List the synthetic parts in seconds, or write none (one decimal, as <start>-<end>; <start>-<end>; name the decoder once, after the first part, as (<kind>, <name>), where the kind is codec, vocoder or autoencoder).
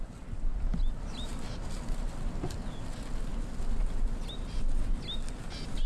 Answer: none